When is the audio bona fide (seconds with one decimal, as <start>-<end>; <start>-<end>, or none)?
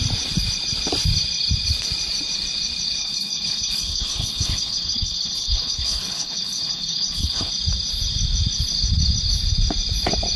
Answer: 0.0-3.0; 7.5-10.4